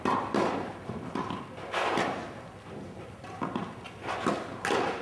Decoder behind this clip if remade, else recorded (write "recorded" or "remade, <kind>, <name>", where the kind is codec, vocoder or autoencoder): recorded